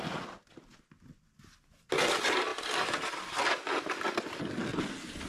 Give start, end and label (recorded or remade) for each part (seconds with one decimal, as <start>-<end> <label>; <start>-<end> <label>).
0.0-5.3 recorded